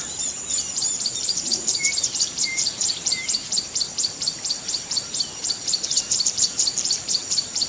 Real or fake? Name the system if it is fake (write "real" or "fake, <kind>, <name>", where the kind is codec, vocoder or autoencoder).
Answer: fake, vocoder, BigVGAN v2